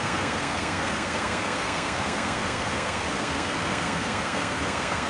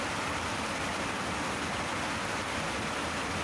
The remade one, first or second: first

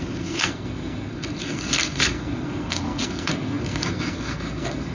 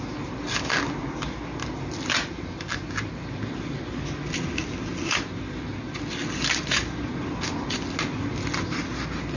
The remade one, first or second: first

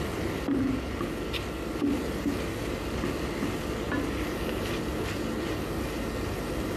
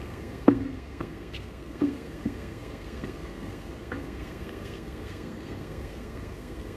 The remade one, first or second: second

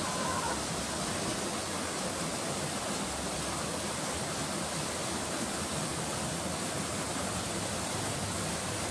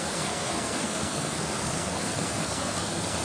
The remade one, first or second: second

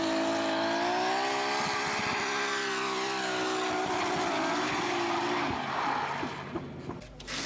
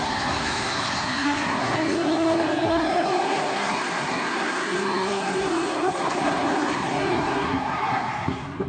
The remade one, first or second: second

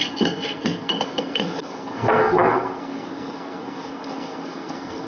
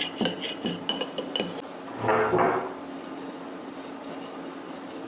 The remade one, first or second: first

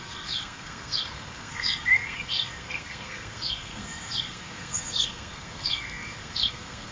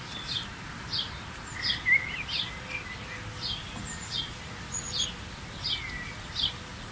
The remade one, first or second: first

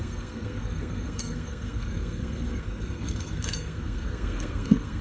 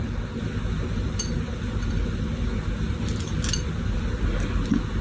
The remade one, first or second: first